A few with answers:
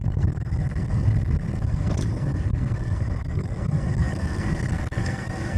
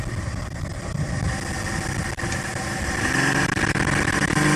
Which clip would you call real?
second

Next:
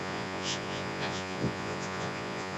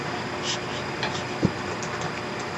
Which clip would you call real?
second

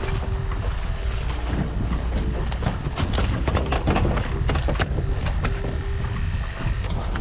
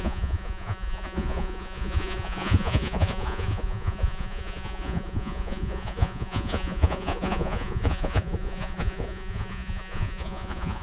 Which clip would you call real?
first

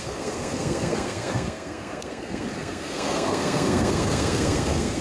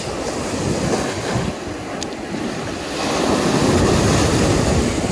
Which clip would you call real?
second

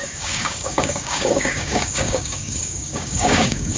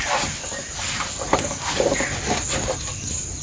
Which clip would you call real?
second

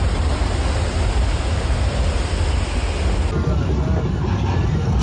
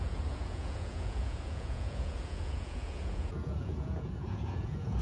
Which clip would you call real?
first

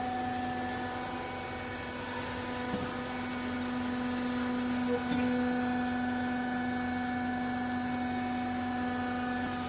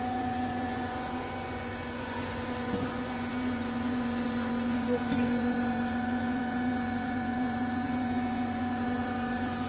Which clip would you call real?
first